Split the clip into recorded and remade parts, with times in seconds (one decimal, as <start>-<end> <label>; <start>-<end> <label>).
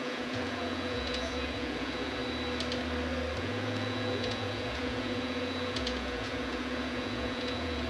0.0-2.2 remade; 2.2-3.4 recorded; 3.4-7.9 remade